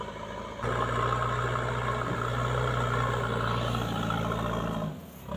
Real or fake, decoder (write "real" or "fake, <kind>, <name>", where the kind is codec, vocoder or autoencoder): real